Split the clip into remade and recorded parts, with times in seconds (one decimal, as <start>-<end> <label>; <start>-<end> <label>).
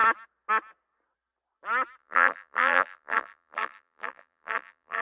0.0-2.0 recorded; 2.0-5.0 remade